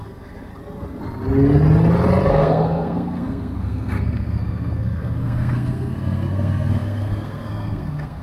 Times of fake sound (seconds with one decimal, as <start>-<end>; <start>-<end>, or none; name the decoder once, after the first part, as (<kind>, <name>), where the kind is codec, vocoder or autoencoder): 0.0-0.5 (codec, SNAC); 2.3-8.2